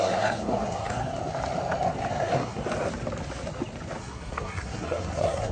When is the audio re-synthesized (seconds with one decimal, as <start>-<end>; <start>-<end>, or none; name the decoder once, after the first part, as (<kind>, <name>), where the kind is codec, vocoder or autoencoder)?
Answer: 0.0-1.1 (codec, SNAC); 2.1-2.6; 4.0-5.5